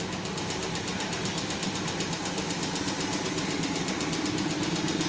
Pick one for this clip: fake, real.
real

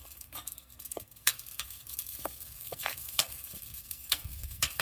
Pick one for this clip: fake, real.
fake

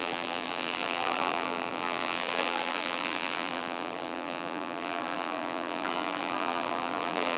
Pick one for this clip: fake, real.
fake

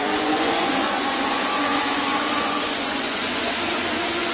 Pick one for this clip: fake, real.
fake